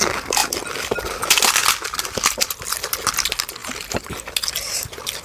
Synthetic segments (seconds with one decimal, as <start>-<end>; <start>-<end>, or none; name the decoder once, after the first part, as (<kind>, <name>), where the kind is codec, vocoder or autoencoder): none